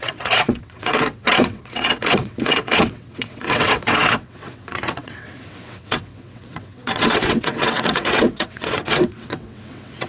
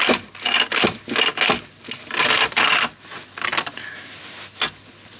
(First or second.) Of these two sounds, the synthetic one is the first